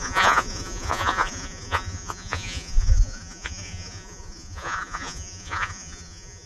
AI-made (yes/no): yes